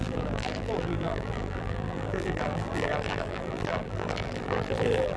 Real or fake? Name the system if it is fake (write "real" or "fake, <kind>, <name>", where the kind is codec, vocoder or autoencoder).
fake, vocoder, BigVGAN v2